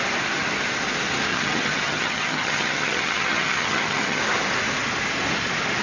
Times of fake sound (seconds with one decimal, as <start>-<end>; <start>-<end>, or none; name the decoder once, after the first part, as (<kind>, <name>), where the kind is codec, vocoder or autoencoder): 1.3-4.2 (vocoder, HiFi-GAN)